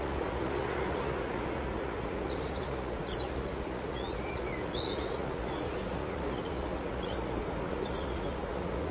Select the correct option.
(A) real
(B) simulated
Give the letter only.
B